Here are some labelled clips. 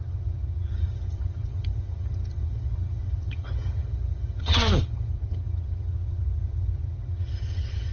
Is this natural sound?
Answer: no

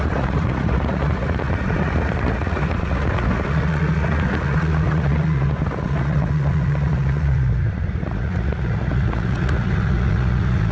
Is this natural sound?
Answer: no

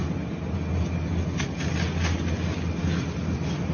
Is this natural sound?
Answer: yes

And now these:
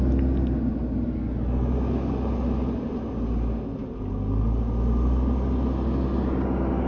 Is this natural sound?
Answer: yes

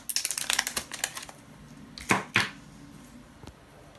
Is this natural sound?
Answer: yes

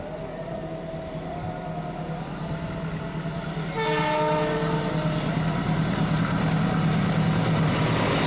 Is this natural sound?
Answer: yes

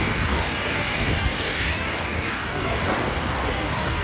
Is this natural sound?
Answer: no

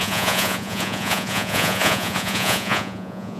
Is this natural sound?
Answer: no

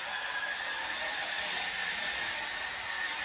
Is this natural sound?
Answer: yes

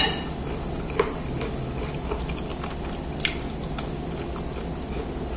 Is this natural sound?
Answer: yes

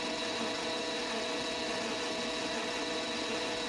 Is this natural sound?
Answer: yes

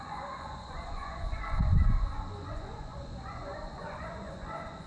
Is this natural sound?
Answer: no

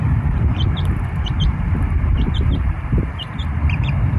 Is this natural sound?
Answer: no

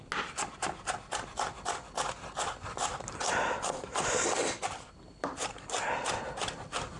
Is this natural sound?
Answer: yes